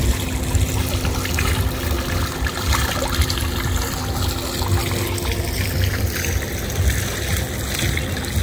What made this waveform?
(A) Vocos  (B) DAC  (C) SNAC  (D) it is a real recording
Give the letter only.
D